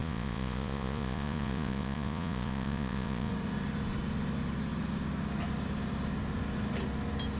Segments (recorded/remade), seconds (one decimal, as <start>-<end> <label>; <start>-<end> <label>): 0.0-3.3 remade; 3.3-7.4 recorded